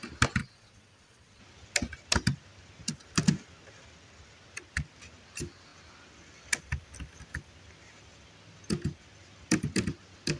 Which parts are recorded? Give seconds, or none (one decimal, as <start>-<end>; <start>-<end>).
0.0-0.4; 1.4-10.4